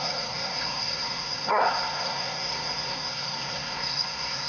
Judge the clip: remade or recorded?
remade